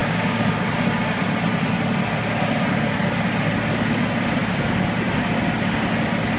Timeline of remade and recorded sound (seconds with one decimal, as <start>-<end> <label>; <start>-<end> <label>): 0.0-0.7 remade; 0.7-6.4 recorded